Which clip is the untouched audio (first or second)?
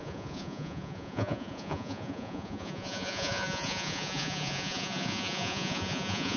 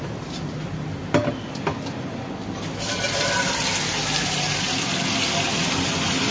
second